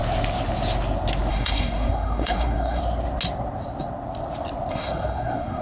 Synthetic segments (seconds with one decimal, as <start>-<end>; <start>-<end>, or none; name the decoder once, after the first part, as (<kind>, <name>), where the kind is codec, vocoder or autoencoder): 1.3-2.8 (codec, SNAC); 4.7-5.6